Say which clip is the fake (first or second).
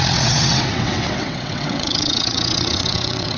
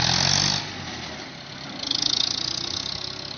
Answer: first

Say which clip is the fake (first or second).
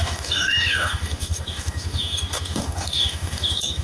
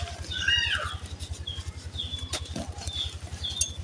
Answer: first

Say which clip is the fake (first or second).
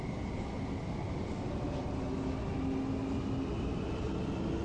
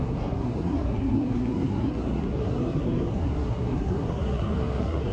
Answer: second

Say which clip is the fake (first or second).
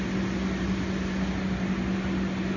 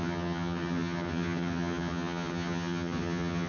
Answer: second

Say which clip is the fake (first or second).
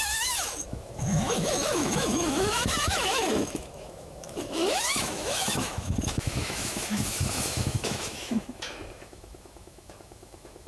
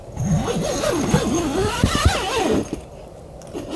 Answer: first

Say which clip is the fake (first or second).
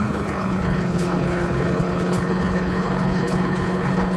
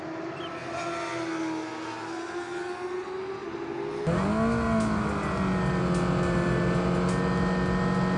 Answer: first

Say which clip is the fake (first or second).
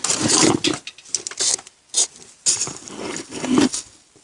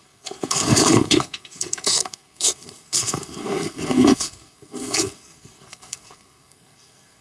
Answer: second